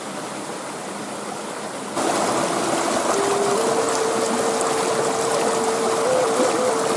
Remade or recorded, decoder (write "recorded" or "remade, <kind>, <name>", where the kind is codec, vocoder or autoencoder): recorded